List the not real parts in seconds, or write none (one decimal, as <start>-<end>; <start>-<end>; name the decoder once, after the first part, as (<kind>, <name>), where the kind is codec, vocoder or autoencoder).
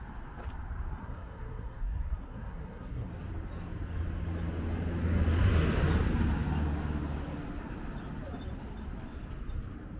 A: 1.0-3.1 (codec, SNAC)